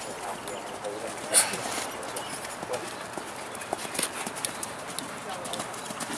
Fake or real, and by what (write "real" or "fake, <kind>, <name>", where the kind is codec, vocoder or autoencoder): real